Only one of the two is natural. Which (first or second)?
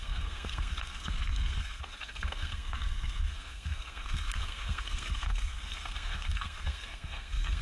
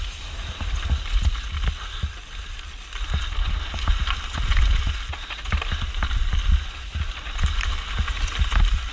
second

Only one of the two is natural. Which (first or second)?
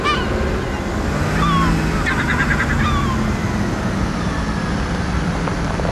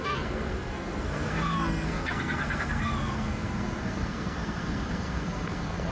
first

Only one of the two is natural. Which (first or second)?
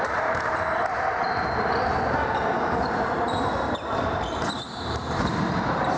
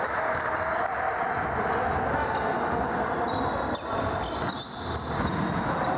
second